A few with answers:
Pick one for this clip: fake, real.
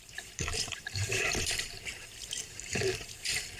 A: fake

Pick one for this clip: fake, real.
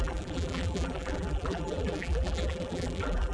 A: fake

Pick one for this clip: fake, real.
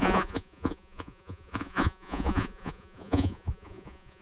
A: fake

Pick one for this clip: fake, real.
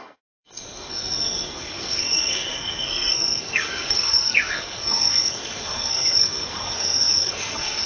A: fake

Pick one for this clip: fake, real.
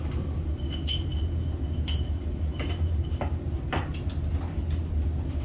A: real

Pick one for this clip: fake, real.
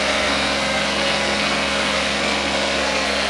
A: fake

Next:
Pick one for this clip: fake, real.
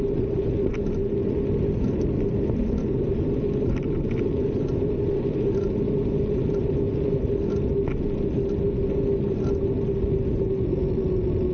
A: real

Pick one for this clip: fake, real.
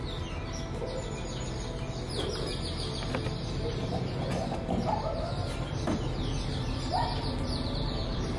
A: real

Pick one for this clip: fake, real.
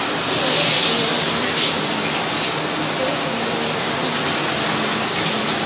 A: real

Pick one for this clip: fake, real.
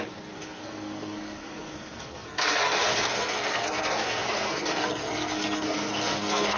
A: fake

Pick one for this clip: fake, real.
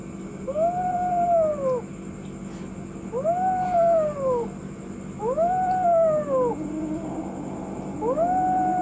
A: real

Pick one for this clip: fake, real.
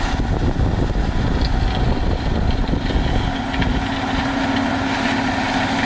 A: real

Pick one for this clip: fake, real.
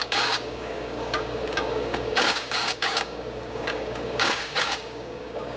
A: fake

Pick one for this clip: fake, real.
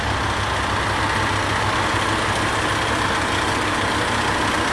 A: real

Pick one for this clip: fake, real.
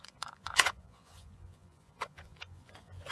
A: fake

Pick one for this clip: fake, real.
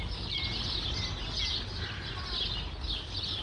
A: real